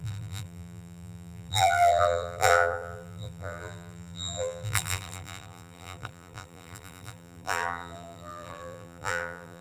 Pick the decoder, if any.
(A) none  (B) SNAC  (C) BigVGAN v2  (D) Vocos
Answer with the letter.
C